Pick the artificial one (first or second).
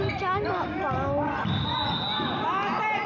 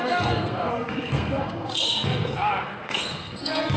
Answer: second